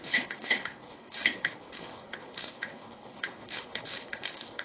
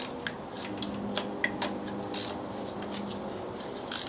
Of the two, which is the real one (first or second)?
second